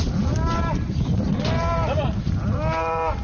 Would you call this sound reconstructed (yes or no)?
no